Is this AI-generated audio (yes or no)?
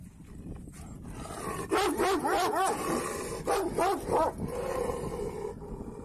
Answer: no